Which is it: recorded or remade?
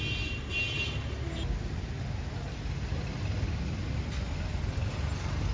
recorded